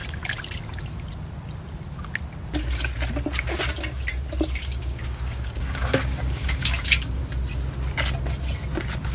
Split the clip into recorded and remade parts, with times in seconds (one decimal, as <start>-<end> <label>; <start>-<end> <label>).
0.0-4.6 recorded; 4.6-7.2 remade; 7.2-9.1 recorded

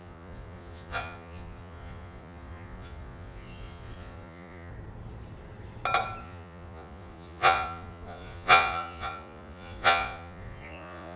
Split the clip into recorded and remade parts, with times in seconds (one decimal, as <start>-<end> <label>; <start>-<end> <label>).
0.0-4.7 remade; 4.7-6.2 recorded; 6.2-11.2 remade